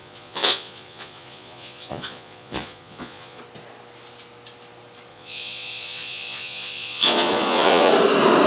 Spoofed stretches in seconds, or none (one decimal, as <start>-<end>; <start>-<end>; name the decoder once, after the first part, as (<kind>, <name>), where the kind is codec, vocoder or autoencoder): 0.0-3.4 (vocoder, Vocos); 5.1-7.9

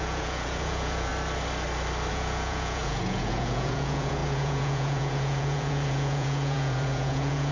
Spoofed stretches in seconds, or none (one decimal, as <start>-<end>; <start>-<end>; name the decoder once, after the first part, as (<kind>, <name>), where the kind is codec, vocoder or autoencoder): 0.0-1.1 (vocoder, Vocos); 2.1-7.5

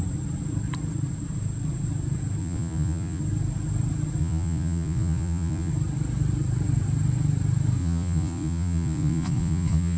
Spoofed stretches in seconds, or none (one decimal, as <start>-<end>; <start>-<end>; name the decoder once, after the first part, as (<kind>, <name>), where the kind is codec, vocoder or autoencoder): 2.4-3.2 (vocoder, Vocos); 4.2-5.7; 7.8-10.0

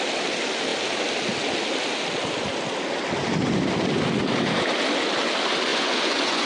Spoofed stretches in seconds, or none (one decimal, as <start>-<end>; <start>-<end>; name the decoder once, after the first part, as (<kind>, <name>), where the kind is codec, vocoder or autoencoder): 5.7-6.5 (vocoder, Vocos)

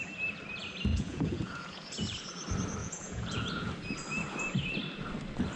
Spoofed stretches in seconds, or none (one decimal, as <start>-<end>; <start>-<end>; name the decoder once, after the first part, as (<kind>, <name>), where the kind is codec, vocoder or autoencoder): 0.9-1.9 (vocoder, Vocos); 2.8-3.7